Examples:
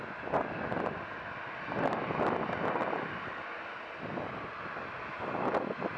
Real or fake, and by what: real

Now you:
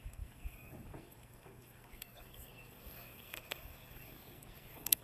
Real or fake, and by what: fake, codec, SNAC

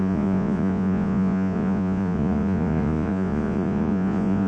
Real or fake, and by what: fake, vocoder, Vocos